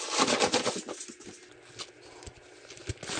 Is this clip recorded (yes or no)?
yes